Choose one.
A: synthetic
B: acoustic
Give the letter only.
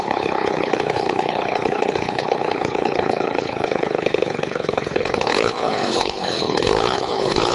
A